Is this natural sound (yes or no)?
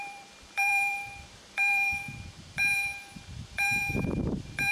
no